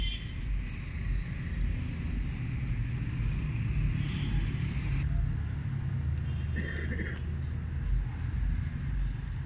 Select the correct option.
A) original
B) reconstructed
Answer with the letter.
A